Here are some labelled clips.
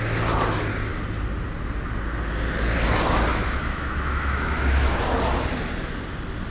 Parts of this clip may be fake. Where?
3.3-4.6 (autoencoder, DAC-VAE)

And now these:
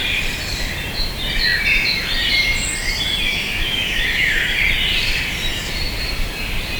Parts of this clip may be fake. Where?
3.3-4.6 (autoencoder, DAC-VAE)

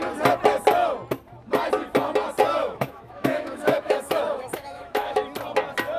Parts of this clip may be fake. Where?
2.6-5.2 (autoencoder, DAC-VAE)

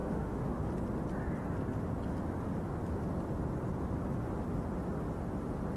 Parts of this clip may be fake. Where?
0.0-0.7 (autoencoder, DAC-VAE)

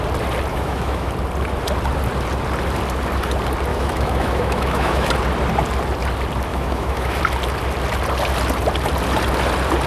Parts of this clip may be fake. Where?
0.5-1.1 (autoencoder, DAC-VAE); 3.7-5.1; 6.5-7.2

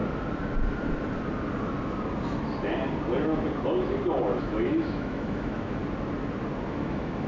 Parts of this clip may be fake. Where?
4.4-5.8 (autoencoder, DAC-VAE); 6.7-7.3